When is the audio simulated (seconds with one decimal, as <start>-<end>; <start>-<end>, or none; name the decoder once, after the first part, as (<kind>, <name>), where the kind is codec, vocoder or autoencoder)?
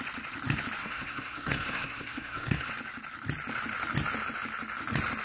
0.8-2.7 (codec, SNAC)